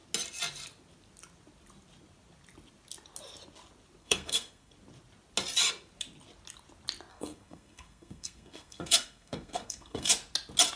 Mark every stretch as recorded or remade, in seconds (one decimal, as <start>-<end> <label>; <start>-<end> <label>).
0.0-4.0 recorded; 4.0-4.7 remade; 4.7-7.1 recorded; 7.1-10.1 remade; 10.1-10.8 recorded

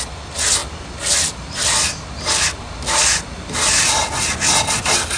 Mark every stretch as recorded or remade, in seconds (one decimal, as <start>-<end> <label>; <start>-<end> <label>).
0.0-5.2 recorded